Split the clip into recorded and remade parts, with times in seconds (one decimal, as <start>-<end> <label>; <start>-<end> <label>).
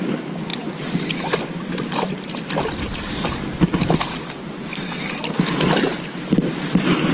0.0-0.5 recorded; 0.5-3.1 remade; 3.1-7.1 recorded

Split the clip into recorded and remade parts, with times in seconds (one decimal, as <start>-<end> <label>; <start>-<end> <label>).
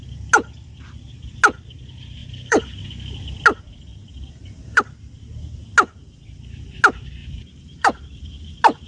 0.0-2.2 recorded; 2.2-2.9 remade; 2.9-3.9 recorded; 3.9-4.8 remade; 4.8-7.2 recorded; 7.2-8.2 remade; 8.2-8.9 recorded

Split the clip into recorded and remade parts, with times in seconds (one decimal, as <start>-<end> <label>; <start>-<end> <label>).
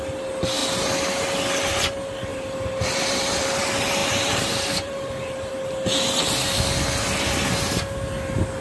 0.0-2.3 recorded; 2.3-3.6 remade; 3.6-4.0 recorded; 4.0-5.5 remade; 5.5-8.6 recorded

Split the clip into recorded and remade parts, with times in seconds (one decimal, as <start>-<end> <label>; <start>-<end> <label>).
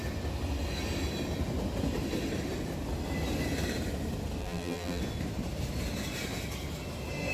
0.0-4.4 recorded; 4.4-5.0 remade; 5.0-7.3 recorded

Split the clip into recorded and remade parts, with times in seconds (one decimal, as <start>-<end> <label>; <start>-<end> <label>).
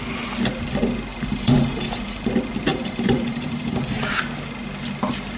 0.0-1.1 recorded; 1.1-2.3 remade; 2.3-2.7 recorded; 2.7-4.1 remade; 4.1-5.4 recorded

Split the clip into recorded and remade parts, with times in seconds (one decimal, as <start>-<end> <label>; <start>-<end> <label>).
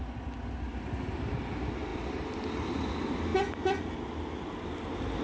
0.0-0.7 recorded; 0.7-1.3 remade; 1.3-1.9 recorded; 1.9-2.9 remade; 2.9-5.2 recorded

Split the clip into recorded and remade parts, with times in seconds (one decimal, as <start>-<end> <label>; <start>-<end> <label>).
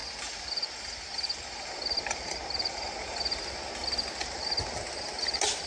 0.0-3.4 remade; 3.4-5.7 recorded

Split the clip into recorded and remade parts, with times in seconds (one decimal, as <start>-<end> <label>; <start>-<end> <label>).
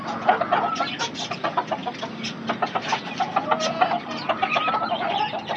0.0-5.6 recorded